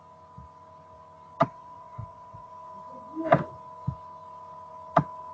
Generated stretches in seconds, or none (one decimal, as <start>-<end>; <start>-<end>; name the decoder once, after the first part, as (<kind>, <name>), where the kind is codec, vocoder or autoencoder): 1.4-2.5 (vocoder, WaveNeXt)